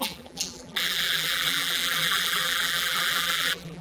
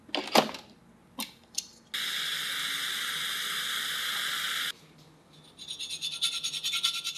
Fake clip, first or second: first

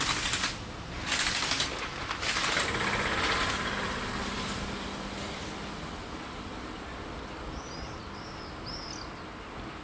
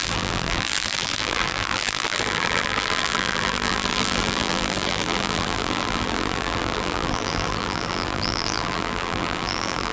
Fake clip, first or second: second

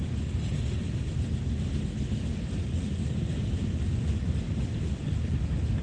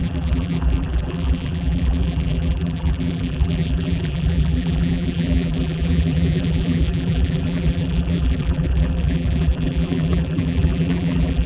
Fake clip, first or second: second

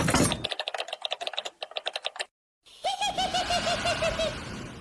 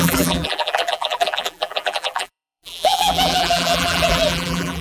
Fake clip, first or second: second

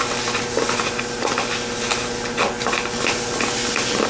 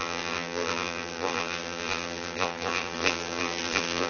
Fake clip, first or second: second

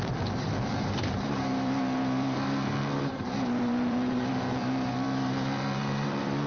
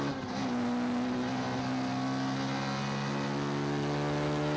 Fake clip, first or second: first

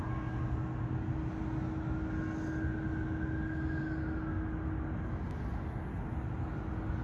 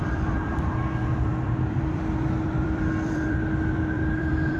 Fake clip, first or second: second